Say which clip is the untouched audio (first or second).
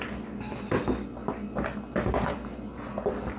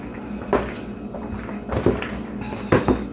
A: first